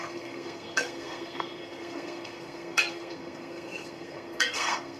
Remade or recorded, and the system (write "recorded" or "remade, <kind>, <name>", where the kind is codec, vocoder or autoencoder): remade, codec, SNAC